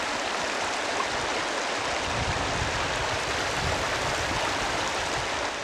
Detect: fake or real real